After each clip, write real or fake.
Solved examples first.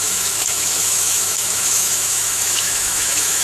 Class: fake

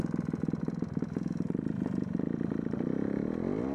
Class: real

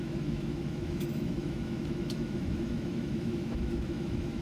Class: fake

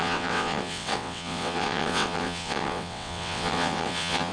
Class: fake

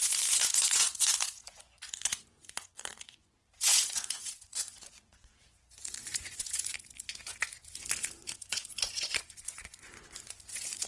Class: fake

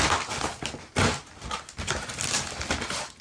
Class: real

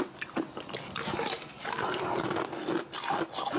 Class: real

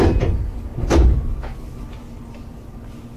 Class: real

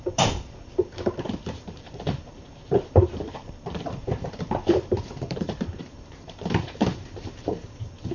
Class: fake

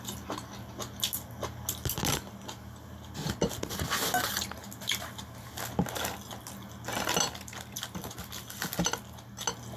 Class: real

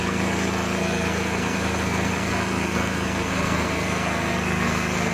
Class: fake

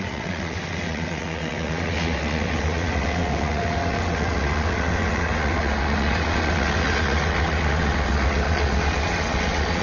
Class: fake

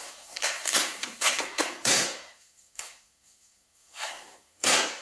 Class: fake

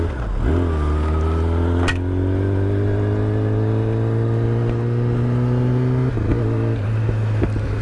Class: real